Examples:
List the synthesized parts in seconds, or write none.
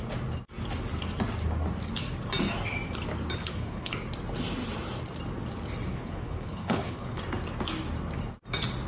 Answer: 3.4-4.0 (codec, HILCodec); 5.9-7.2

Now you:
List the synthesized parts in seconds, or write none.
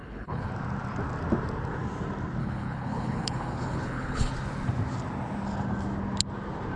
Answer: 0.0-0.5 (codec, HILCodec); 2.4-4.3